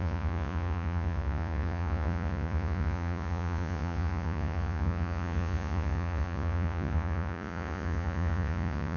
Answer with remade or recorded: remade